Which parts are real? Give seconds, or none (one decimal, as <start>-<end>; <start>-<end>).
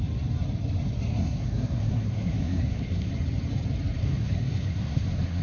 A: 0.0-1.1; 3.1-4.0